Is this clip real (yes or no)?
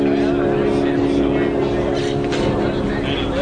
yes